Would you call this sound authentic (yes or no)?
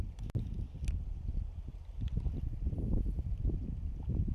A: yes